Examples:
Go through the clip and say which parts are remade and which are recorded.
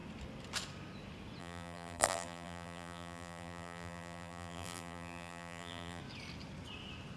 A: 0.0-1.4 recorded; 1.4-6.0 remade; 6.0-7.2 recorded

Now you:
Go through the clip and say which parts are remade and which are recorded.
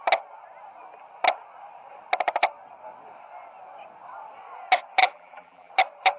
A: 0.0-5.0 recorded; 5.0-5.7 remade; 5.7-6.2 recorded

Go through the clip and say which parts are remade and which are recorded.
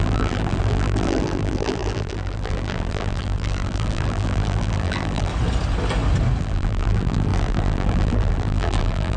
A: 0.0-5.3 remade; 5.3-6.4 recorded; 6.4-9.2 remade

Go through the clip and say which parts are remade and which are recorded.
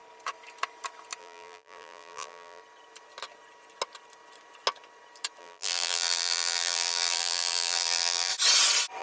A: 0.0-1.2 recorded; 1.2-2.6 remade; 2.6-5.4 recorded; 5.4-8.3 remade; 8.3-9.0 recorded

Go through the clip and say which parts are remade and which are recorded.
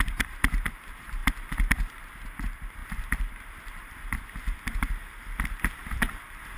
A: 0.0-6.6 remade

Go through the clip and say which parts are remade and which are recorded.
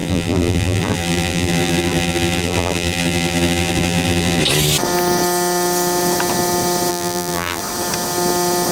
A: 0.0-4.4 remade; 4.4-6.9 recorded; 6.9-7.6 remade; 7.6-8.7 recorded